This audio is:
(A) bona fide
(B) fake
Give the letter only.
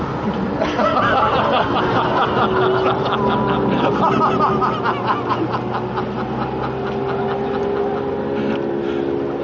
A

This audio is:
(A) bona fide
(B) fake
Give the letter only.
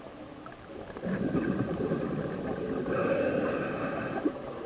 A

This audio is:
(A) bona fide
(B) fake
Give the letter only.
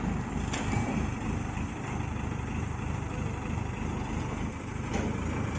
A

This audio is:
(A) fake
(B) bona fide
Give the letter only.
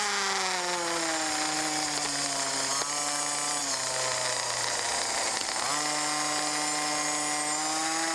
B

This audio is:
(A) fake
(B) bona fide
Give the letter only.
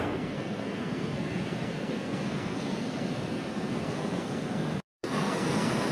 A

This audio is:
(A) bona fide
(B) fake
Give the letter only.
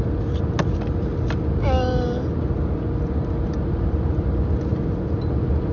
A